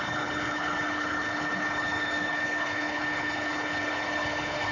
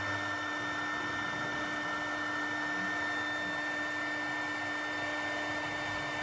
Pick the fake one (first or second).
first